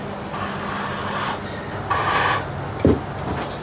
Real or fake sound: real